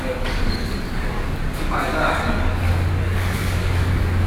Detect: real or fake fake